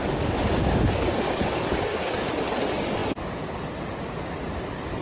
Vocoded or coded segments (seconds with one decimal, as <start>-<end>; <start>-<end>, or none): 0.0-2.3